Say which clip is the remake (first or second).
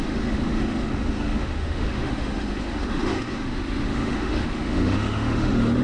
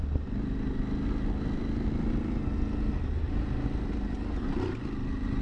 first